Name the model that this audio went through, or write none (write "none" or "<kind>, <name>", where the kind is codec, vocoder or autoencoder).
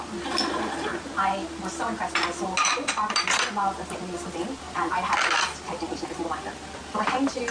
none